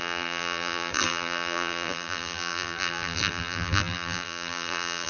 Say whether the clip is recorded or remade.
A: remade